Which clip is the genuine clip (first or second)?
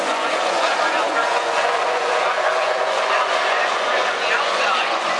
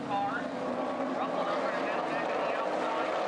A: second